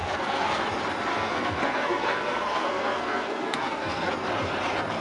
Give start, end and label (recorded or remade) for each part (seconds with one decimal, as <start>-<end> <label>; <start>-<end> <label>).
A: 0.0-0.6 remade; 0.6-1.1 recorded; 1.1-4.1 remade; 4.1-5.0 recorded